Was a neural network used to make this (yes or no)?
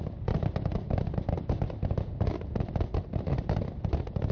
no